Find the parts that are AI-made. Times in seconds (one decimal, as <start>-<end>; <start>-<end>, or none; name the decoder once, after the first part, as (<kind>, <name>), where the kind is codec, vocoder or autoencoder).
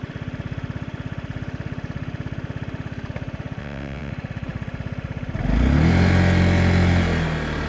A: 3.6-4.1 (vocoder, WaveNeXt)